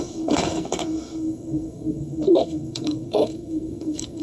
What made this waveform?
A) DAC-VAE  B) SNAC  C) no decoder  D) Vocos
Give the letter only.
B